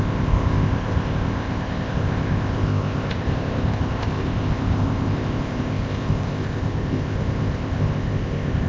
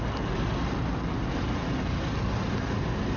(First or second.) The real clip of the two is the second